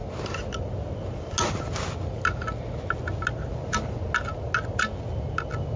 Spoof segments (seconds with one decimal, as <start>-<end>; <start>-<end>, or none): none